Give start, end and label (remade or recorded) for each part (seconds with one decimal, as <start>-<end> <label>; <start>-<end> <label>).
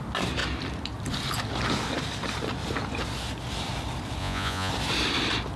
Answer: 0.0-4.2 recorded; 4.2-4.7 remade; 4.7-5.6 recorded